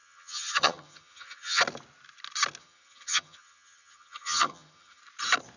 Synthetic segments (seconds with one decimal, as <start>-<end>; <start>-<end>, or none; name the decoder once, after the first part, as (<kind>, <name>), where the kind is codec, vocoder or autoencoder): 0.0-1.6 (vocoder, HiFi-GAN); 2.6-5.0